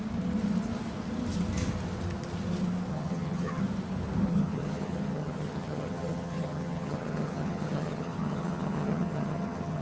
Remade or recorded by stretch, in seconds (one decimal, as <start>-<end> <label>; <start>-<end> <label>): 0.0-2.9 recorded; 2.9-3.6 remade; 3.6-4.3 recorded; 4.3-9.8 remade